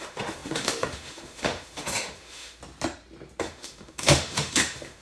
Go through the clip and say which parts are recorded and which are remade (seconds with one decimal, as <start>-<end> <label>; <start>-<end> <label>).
0.0-2.6 remade; 2.6-3.4 recorded; 3.4-5.0 remade